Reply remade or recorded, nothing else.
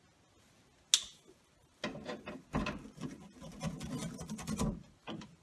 recorded